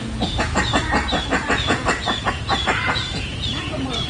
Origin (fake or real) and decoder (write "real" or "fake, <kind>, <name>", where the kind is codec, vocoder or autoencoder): fake, vocoder, Vocos